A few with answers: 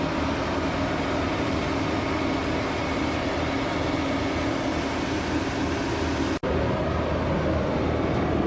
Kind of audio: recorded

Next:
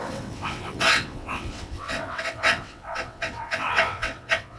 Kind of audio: remade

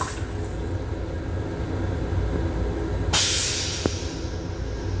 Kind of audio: recorded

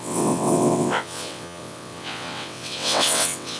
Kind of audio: remade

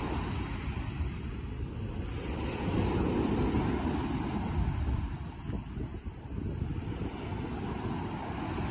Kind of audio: recorded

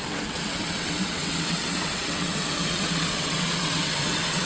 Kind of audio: remade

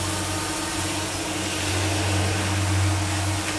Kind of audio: recorded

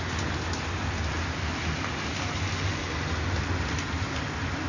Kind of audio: recorded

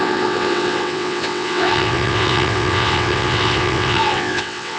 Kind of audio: remade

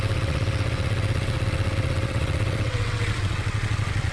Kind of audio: remade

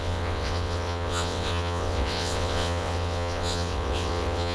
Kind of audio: remade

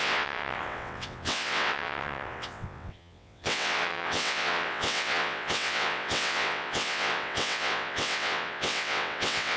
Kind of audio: remade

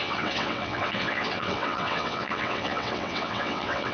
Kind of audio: remade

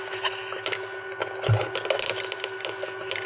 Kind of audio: recorded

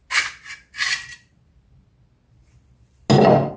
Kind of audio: recorded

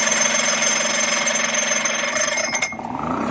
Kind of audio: recorded